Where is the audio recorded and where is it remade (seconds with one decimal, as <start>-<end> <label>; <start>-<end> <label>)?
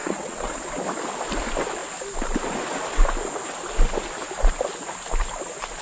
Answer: 0.0-0.6 remade; 0.6-5.8 recorded